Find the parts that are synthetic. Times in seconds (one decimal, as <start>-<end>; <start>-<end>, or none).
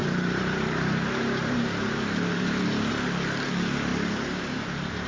0.0-2.9; 3.9-4.6